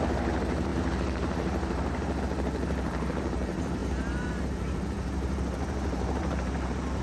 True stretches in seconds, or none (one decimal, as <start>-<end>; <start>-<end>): none